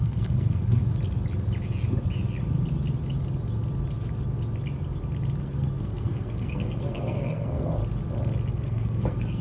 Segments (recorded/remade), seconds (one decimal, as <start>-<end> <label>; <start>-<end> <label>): 0.0-0.8 remade; 0.8-5.4 recorded; 5.4-7.8 remade; 7.8-8.5 recorded; 8.5-9.4 remade